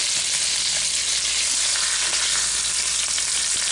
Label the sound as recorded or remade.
recorded